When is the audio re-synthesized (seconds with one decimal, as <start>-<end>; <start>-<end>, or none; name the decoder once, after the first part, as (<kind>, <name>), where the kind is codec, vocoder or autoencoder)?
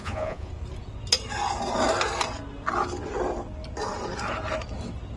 0.0-0.5 (vocoder, Vocos)